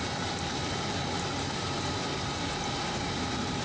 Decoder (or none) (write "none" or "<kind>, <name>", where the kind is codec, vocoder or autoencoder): none